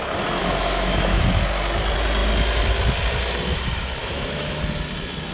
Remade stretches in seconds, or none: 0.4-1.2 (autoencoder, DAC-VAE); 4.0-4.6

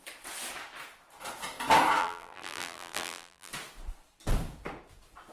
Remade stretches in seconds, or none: 2.0-3.5 (vocoder, BigVGAN v2)

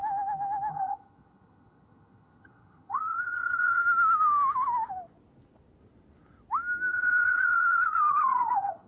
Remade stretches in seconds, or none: 0.7-3.8 (vocoder, HiFi-GAN); 6.9-8.9

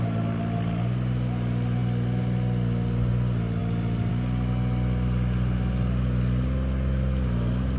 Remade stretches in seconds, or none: none

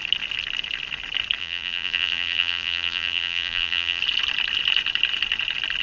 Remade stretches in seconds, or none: 1.4-4.0 (vocoder, BigVGAN v2)

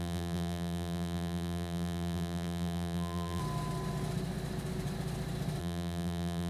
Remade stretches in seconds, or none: 0.0-3.4 (vocoder, BigVGAN v2); 5.6-6.5